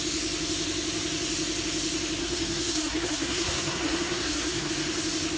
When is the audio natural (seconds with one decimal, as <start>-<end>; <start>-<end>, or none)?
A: 0.0-2.2; 4.7-5.4